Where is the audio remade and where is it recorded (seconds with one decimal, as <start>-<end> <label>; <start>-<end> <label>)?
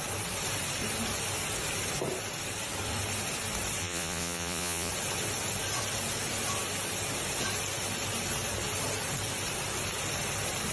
0.0-3.8 recorded; 3.8-4.9 remade; 4.9-10.7 recorded